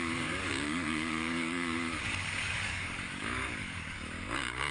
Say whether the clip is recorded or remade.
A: remade